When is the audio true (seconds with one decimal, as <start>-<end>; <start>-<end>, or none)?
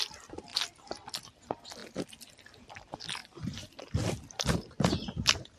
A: 1.8-2.6